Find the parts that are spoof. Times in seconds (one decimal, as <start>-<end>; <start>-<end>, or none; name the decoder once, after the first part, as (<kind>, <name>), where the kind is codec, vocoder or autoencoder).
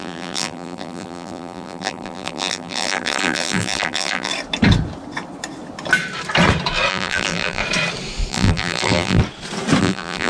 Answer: 0.0-4.3 (vocoder, BigVGAN v2); 6.9-7.6; 8.3-9.2; 9.8-10.3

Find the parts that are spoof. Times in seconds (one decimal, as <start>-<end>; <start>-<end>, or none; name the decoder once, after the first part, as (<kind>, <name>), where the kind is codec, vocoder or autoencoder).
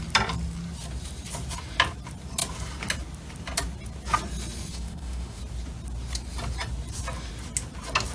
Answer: 4.7-5.4 (autoencoder, DAC-VAE)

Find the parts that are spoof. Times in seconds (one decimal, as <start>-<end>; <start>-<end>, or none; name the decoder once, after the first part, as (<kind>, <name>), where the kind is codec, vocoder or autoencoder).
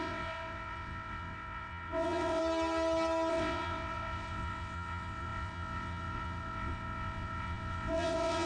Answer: 0.0-2.4 (vocoder, WaveNeXt); 3.3-8.5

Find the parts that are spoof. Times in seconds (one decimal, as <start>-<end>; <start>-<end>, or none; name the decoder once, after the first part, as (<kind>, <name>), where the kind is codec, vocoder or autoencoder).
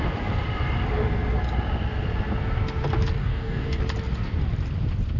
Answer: 3.2-3.8 (codec, DAC)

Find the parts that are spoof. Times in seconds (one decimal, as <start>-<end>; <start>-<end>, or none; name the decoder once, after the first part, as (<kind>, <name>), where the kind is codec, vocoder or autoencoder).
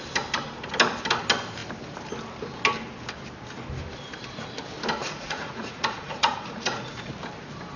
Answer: 5.0-7.1 (vocoder, Vocos)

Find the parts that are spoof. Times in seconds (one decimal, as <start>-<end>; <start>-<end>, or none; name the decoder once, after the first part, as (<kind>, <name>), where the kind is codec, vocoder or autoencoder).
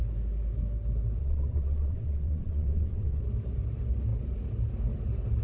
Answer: 1.2-3.2 (vocoder, WaveNeXt)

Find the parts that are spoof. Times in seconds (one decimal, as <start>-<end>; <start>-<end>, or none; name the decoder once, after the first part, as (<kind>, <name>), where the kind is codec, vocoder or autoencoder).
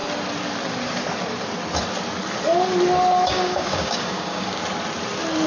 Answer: 3.3-4.6 (codec, DAC)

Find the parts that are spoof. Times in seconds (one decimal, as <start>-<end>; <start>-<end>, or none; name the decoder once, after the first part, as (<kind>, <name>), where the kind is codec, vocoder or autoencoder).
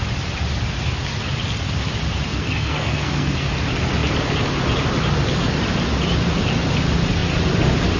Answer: 2.3-3.5 (codec, SNAC)